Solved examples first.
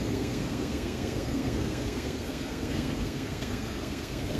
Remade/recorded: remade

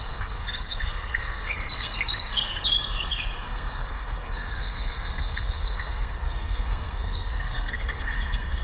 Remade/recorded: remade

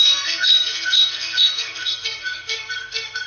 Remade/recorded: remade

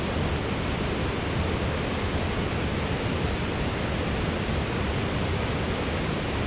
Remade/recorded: recorded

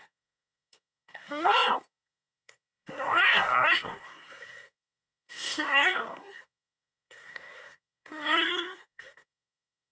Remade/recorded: remade